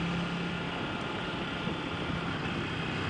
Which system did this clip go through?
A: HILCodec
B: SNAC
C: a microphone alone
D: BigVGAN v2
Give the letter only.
C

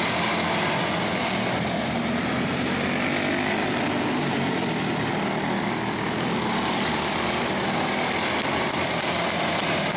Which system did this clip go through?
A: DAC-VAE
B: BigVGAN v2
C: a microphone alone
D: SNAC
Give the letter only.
C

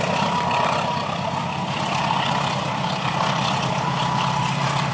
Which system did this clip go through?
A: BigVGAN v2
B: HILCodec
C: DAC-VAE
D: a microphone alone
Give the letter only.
A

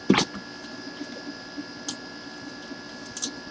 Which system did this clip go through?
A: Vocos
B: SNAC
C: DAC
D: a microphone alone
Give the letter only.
D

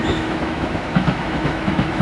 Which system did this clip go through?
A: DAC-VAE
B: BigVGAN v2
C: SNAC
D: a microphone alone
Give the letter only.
A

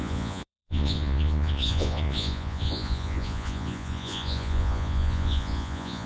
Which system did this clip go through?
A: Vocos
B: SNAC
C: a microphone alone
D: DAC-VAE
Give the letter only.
A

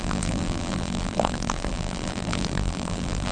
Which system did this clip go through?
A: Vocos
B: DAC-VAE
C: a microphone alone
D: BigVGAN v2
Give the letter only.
D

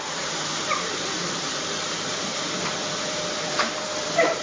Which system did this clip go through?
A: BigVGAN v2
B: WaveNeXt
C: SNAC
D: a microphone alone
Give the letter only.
A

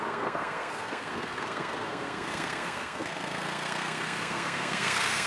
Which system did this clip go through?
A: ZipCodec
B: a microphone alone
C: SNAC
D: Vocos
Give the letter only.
C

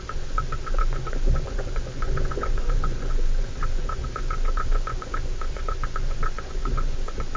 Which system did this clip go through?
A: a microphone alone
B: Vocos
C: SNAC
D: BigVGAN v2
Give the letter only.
B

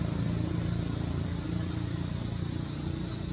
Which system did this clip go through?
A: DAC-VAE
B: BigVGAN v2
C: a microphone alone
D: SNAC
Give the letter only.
C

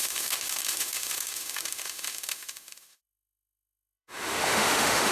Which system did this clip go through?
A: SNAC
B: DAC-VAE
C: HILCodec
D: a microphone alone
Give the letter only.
B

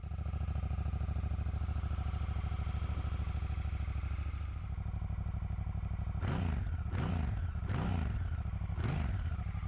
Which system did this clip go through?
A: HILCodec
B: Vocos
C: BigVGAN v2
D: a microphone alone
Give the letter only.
D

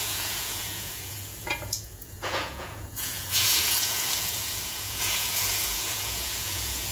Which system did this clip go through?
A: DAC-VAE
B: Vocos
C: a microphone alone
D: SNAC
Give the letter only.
B